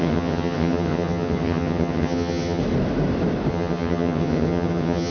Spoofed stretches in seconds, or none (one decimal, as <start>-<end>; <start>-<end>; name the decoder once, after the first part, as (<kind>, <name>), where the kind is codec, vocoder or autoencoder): 0.0-2.6 (vocoder, HiFi-GAN); 3.5-5.1